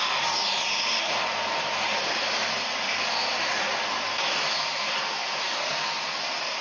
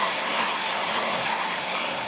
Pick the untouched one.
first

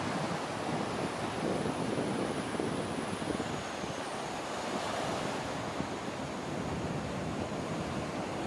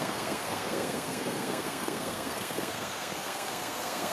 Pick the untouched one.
first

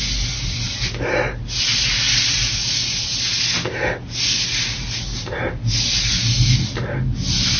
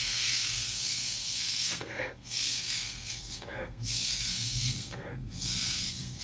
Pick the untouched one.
first